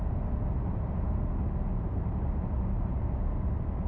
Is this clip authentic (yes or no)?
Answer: yes